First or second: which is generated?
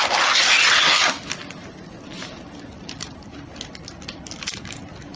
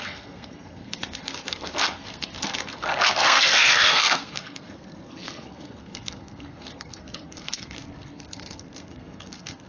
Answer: second